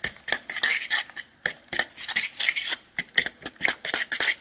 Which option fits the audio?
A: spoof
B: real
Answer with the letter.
B